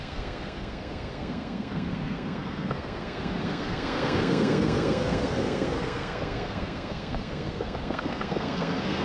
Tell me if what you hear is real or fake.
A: fake